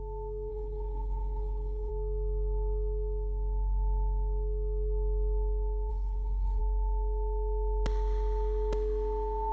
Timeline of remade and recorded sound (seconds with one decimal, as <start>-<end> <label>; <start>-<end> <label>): 0.0-0.5 recorded; 0.5-1.9 remade; 1.9-5.9 recorded; 5.9-6.6 remade; 6.6-9.5 recorded